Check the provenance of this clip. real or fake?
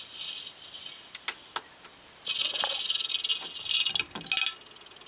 real